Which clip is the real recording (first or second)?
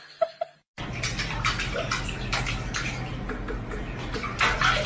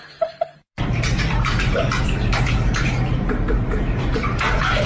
first